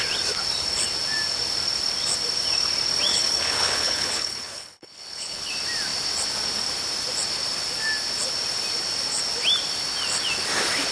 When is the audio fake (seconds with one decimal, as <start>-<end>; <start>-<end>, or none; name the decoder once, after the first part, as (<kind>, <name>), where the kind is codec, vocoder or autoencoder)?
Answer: 3.1-5.5 (codec, HILCodec)